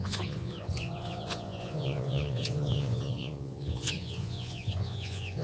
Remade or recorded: remade